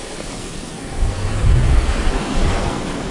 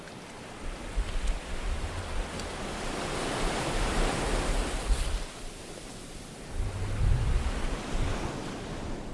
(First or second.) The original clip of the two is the second